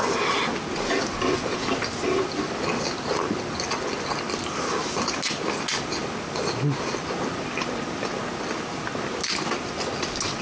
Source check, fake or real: real